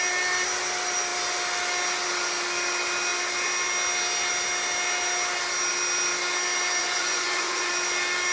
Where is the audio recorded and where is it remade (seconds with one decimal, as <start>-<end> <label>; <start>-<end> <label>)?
0.0-6.8 recorded; 6.8-7.7 remade; 7.7-8.3 recorded